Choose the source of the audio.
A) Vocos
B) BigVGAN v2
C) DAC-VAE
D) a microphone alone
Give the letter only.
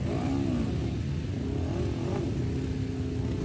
D